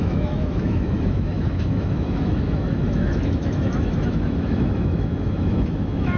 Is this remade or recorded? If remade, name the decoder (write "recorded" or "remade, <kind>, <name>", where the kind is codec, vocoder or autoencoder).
remade, autoencoder, DAC-VAE